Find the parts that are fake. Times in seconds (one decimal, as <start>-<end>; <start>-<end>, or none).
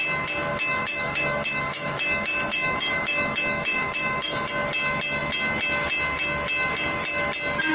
0.5-4.5